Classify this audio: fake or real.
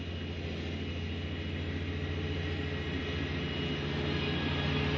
real